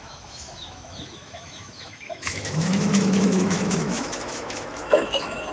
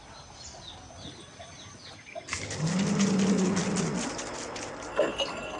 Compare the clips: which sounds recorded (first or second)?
second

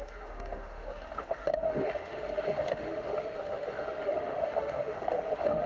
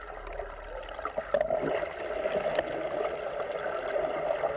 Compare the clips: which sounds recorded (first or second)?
second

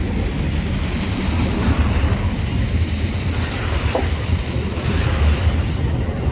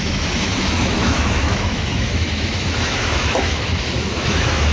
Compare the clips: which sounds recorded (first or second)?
first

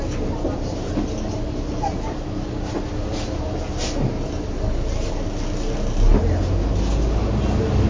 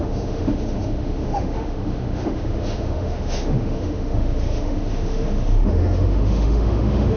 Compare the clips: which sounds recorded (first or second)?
first